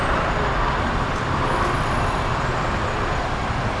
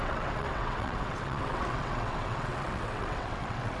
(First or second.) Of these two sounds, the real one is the first